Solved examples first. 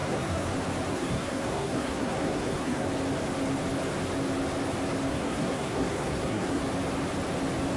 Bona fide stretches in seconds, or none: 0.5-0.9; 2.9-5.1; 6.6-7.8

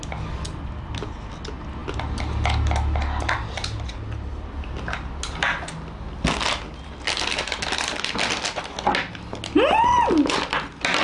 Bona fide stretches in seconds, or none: 0.0-11.0

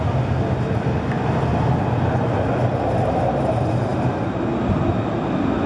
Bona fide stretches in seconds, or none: 0.0-5.7

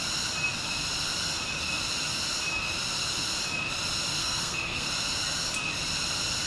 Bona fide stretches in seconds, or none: 0.0-4.2; 4.9-6.5